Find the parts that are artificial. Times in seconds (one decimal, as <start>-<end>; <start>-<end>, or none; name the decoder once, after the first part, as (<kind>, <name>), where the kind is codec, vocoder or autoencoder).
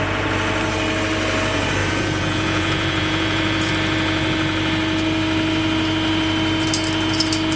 1.8-3.7 (vocoder, Vocos)